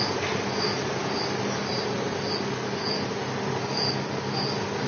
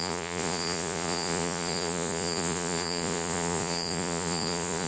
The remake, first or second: second